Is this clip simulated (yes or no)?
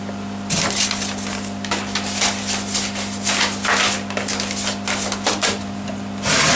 no